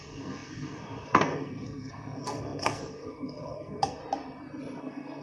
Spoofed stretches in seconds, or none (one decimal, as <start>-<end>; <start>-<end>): 0.0-4.0; 4.8-5.2